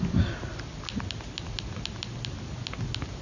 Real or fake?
real